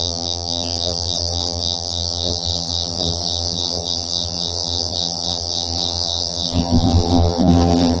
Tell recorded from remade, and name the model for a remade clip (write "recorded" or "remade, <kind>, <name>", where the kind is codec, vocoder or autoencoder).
remade, vocoder, BigVGAN v2